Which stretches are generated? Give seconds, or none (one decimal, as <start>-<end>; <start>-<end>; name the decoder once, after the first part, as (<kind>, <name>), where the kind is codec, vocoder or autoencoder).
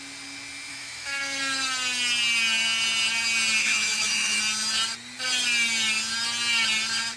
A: 0.7-1.2 (autoencoder, DAC-VAE); 3.6-4.4